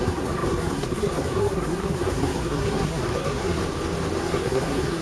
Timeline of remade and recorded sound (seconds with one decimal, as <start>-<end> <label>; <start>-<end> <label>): 0.0-3.6 remade; 3.6-4.2 recorded; 4.2-5.0 remade